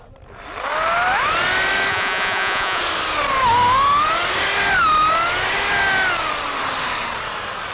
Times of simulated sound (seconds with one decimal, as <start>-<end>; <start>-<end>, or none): 1.9-2.8